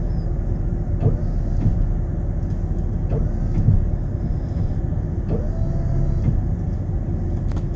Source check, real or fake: real